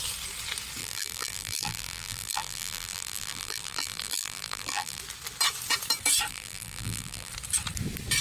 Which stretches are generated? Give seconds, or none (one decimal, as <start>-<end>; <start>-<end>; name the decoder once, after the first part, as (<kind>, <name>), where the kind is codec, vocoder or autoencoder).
0.8-5.0 (vocoder, BigVGAN v2); 6.3-7.3